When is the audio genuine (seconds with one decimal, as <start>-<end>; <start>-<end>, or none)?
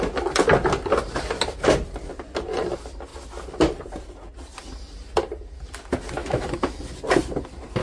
0.0-6.2; 6.8-7.8